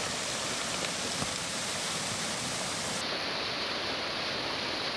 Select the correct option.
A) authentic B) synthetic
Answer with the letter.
A